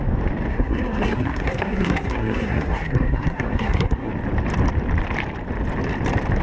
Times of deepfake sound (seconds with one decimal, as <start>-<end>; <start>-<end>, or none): 0.5-4.1